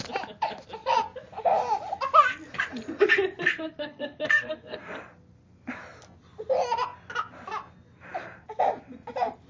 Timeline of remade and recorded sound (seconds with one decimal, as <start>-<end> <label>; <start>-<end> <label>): 0.0-3.5 recorded; 3.5-4.9 remade; 4.9-9.5 recorded